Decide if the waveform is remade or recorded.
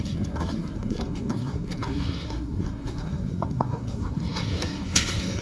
remade